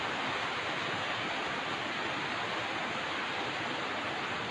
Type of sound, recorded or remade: recorded